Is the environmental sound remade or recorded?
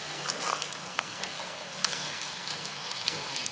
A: remade